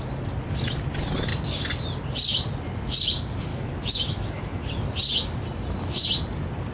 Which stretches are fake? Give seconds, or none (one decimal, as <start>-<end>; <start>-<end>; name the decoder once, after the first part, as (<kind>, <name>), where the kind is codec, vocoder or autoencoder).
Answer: 3.5-4.7 (autoencoder, DAC-VAE)